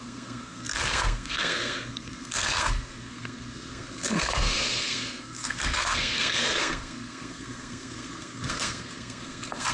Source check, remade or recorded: remade